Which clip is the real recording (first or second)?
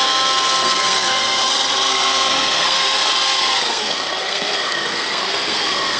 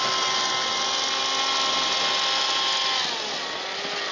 second